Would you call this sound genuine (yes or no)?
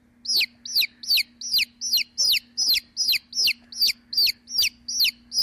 yes